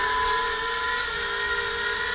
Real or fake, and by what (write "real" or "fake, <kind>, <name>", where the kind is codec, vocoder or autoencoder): real